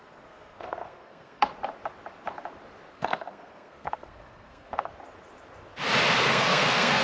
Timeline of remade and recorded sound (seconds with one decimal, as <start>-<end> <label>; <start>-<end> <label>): 0.0-1.5 remade; 1.5-2.9 recorded; 2.9-4.9 remade; 4.9-6.2 recorded; 6.2-7.0 remade